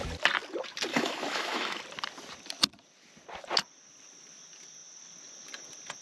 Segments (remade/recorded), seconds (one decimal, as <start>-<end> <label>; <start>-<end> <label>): 0.0-0.9 recorded; 0.9-1.8 remade; 1.8-6.0 recorded